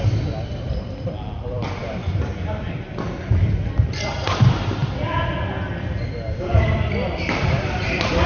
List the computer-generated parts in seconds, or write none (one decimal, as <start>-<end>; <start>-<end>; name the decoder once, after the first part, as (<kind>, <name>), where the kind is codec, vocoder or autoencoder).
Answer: none